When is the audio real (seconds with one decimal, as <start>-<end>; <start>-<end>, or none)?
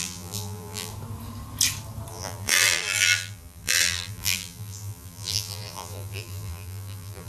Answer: 0.9-2.1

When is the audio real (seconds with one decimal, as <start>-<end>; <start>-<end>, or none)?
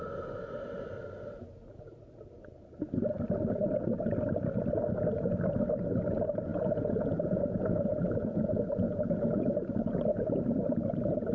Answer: 0.0-6.5; 9.7-11.3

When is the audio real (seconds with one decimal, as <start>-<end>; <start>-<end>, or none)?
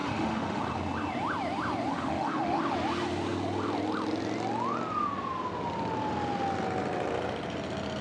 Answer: 0.6-1.9; 2.6-8.0